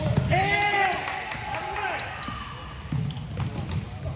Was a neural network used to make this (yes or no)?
no